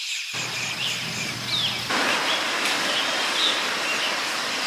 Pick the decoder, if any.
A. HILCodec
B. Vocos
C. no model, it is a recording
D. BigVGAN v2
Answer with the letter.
C